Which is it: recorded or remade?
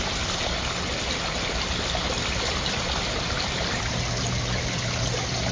recorded